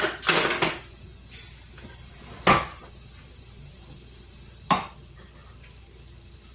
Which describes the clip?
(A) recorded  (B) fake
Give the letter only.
A